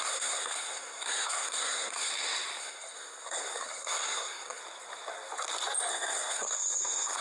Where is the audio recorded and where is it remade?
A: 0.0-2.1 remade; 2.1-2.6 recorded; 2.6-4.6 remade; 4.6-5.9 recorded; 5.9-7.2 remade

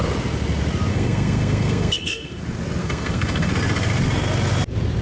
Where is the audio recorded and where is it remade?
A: 0.0-0.9 recorded; 0.9-2.4 remade; 2.4-2.8 recorded; 2.8-3.5 remade; 3.5-5.0 recorded

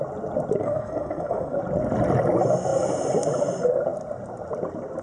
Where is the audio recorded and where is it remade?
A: 0.0-0.6 recorded; 0.6-1.6 remade; 1.6-5.0 recorded

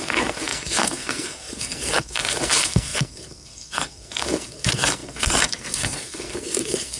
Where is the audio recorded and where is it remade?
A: 0.0-7.0 remade

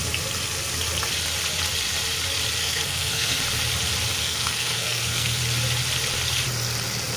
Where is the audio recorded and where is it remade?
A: 0.0-2.6 recorded; 2.6-3.4 remade; 3.4-4.2 recorded; 4.2-5.4 remade; 5.4-7.2 recorded

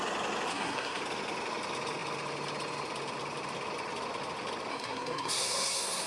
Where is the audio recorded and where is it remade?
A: 0.0-0.5 recorded; 0.5-1.0 remade; 1.0-4.7 recorded; 4.7-6.1 remade

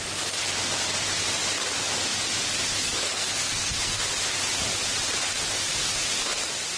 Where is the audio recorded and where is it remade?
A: 0.0-2.8 recorded; 2.8-4.0 remade; 4.0-6.8 recorded